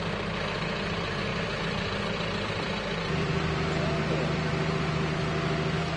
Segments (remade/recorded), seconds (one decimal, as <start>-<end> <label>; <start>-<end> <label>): 0.0-1.3 recorded; 1.3-4.9 remade; 4.9-6.0 recorded